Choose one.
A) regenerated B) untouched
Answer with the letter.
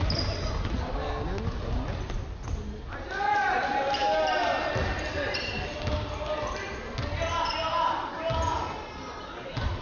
B